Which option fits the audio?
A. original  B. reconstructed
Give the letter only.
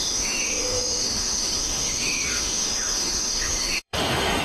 B